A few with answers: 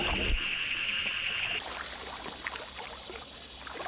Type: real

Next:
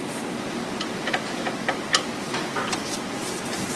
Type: real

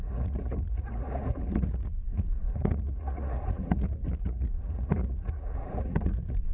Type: fake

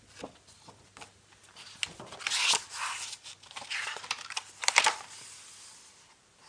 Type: real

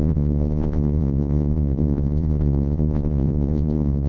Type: fake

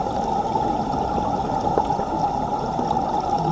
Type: real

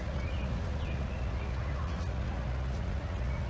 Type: fake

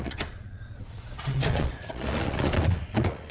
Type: fake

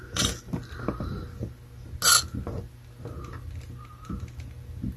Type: real